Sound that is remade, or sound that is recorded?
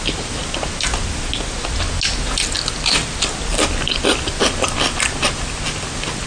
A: recorded